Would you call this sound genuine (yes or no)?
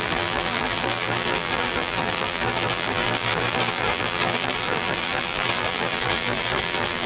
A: no